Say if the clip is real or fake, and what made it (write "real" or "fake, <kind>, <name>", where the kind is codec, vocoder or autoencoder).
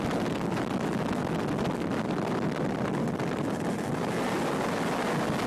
real